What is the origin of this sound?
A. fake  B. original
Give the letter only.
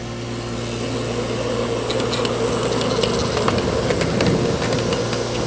B